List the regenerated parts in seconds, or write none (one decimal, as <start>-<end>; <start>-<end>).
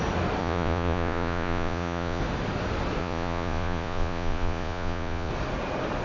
0.4-2.2; 3.0-5.3